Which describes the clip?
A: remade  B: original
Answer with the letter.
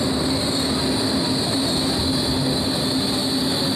B